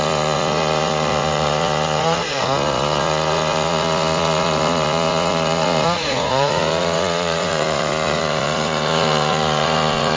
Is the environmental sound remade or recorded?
remade